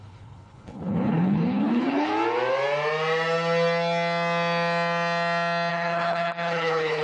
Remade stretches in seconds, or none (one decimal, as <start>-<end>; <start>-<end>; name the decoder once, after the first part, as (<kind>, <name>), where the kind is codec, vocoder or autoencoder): 0.0-2.1 (codec, HILCodec); 5.7-7.0